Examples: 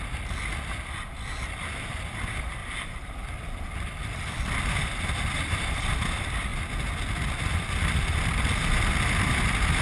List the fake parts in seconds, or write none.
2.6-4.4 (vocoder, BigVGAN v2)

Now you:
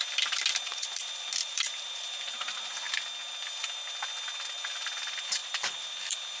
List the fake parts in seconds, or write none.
0.7-2.8 (vocoder, BigVGAN v2); 5.4-6.4